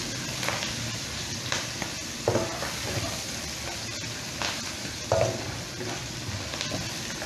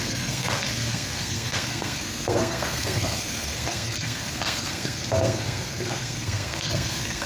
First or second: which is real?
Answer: first